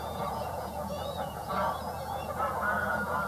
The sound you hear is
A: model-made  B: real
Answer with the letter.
A